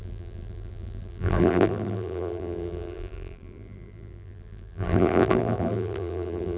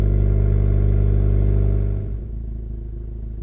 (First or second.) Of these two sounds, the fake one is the first